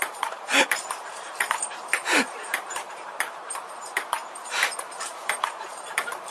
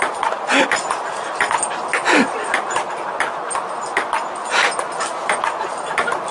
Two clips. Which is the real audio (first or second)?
second